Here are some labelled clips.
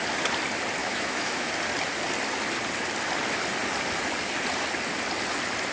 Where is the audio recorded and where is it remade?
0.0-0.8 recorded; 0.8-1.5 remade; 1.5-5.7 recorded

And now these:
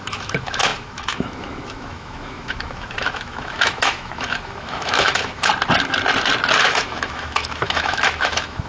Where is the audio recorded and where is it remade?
0.0-5.5 remade; 5.5-6.6 recorded; 6.6-8.7 remade